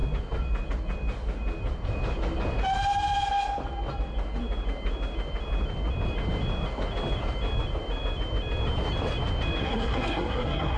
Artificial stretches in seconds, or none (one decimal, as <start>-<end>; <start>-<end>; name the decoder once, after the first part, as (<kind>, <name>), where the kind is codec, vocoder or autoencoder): 9.6-10.8 (codec, SNAC)